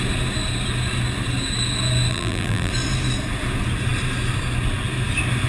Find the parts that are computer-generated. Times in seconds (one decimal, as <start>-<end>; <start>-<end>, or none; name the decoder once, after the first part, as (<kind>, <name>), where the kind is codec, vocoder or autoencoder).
2.1-2.7 (vocoder, BigVGAN v2)